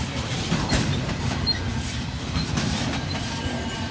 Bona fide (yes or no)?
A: no